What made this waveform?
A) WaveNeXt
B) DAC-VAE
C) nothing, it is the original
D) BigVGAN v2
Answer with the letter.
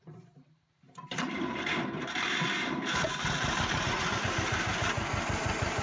D